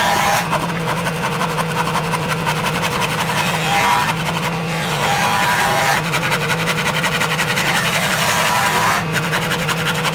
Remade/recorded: recorded